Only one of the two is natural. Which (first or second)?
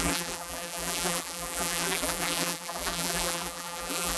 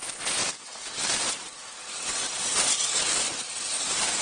second